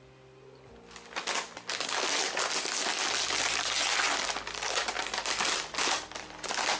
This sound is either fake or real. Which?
real